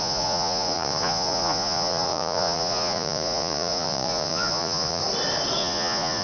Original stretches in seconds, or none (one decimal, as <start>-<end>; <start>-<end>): 5.0-5.6